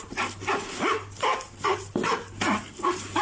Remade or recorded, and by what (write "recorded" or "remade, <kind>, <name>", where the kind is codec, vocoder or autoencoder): recorded